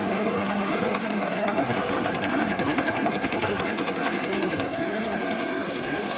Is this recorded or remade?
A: remade